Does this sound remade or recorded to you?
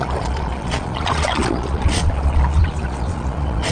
remade